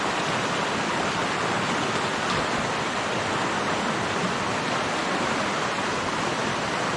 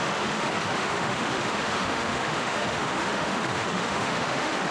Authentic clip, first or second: first